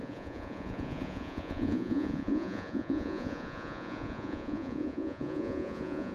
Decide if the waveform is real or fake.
fake